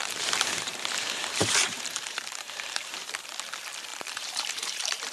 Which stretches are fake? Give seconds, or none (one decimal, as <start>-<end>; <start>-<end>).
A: 0.0-3.1; 3.9-5.1